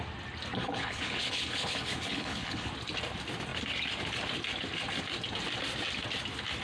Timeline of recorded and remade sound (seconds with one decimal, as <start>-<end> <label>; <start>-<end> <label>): 0.0-0.5 recorded; 0.5-2.7 remade; 2.7-6.6 recorded